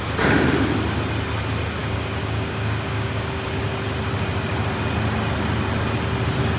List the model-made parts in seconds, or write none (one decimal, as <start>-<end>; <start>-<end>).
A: 1.8-3.4